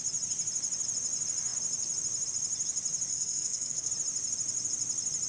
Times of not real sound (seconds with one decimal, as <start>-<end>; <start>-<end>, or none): 3.1-3.9